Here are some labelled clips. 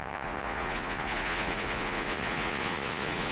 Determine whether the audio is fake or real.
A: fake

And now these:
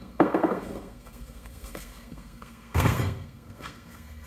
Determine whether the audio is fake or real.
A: fake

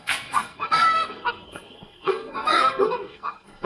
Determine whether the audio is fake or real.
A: fake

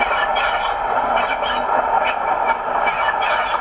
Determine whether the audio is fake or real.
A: fake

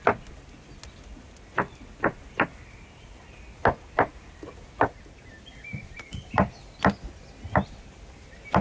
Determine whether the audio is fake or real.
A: real